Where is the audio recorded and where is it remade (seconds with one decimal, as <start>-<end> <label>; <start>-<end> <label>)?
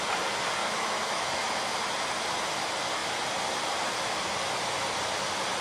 0.0-0.6 recorded; 0.6-1.7 remade; 1.7-5.6 recorded